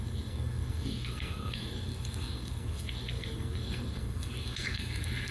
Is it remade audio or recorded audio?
remade